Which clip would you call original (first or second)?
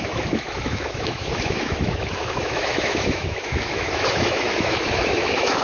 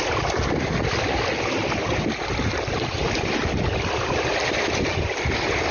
second